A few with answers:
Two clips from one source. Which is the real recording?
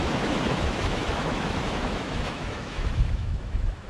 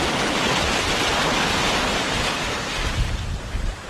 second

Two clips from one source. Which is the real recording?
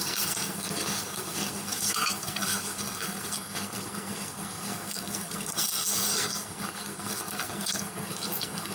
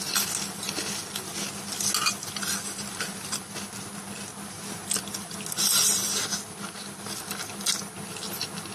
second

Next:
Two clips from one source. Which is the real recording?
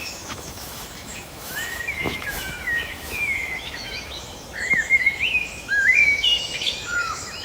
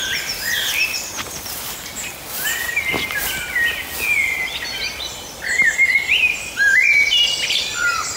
second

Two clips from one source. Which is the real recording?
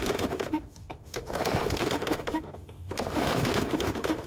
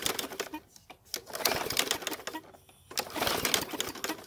second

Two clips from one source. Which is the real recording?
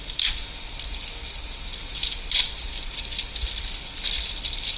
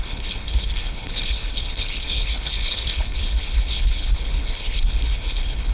first